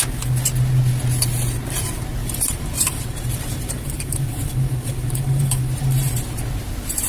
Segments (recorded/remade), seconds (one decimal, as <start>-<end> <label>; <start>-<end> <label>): 0.0-2.2 recorded; 2.2-6.1 remade; 6.1-7.1 recorded